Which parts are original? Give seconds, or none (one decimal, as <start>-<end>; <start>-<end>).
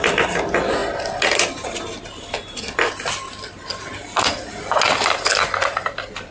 0.0-6.3